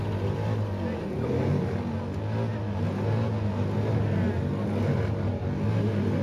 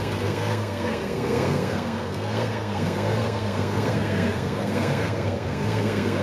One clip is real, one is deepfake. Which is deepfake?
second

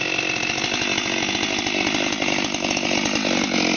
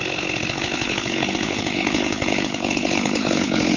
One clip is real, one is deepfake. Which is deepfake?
second